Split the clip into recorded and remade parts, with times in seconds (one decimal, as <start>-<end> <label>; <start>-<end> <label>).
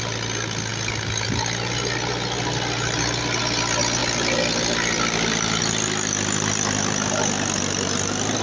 0.0-8.4 recorded